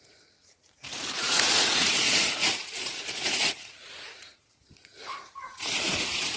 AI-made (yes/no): yes